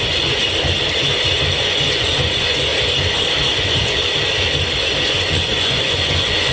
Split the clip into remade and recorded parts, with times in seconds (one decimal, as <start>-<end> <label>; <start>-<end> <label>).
0.0-0.4 remade; 0.4-1.6 recorded; 1.6-2.7 remade; 2.7-3.5 recorded; 3.5-4.0 remade; 4.0-5.0 recorded; 5.0-6.5 remade